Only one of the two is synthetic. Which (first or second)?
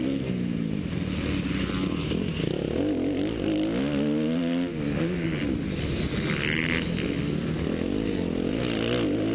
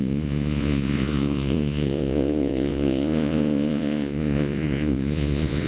second